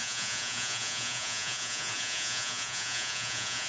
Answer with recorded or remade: remade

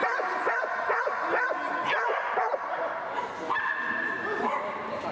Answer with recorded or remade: recorded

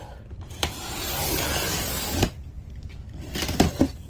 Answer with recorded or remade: recorded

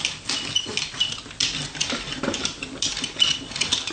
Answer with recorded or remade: recorded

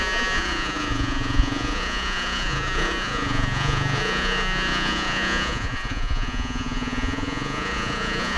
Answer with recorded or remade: remade